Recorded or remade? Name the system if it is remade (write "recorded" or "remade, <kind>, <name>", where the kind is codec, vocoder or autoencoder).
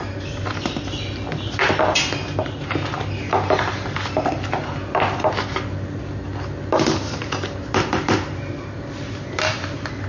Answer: recorded